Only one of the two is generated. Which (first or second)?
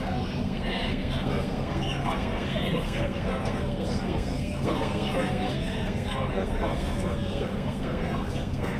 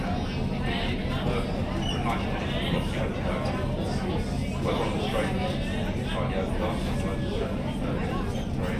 first